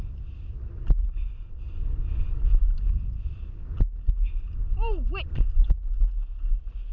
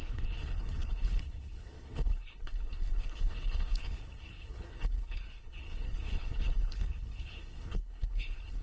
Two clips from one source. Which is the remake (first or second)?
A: second